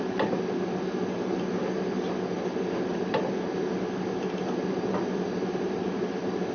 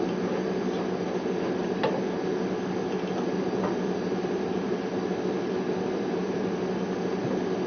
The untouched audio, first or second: second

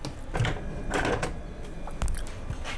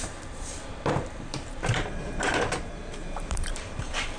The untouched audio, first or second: first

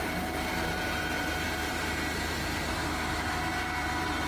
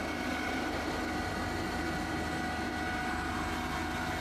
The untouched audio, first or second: second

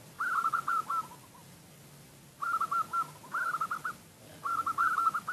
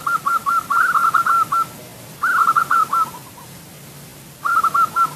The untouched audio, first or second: first